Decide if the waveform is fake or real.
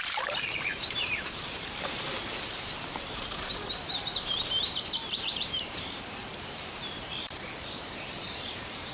fake